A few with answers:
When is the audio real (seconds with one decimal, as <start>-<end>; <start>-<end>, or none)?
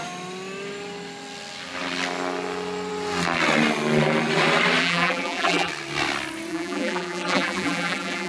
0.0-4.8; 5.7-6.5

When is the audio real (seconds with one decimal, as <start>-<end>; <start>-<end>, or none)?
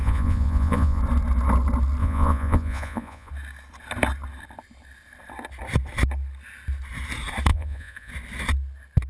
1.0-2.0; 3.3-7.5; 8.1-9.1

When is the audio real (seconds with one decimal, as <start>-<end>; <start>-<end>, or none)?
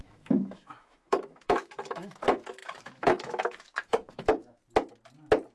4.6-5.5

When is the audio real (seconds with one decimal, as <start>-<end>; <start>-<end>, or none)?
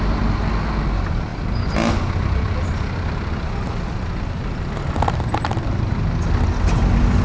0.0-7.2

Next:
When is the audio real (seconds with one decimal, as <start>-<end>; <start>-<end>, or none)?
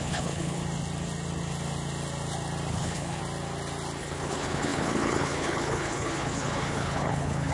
0.6-2.7; 3.2-4.0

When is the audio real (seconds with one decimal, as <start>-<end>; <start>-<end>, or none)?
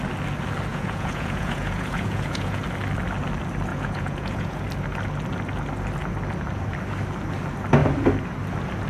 0.0-0.7; 2.6-3.7; 4.6-8.9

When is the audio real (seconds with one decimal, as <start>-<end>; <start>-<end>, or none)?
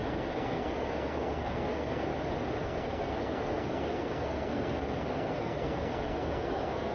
2.1-2.6